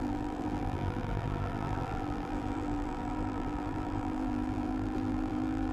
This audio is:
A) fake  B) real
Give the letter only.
A